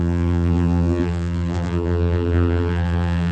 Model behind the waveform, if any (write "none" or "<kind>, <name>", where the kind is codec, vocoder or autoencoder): vocoder, BigVGAN v2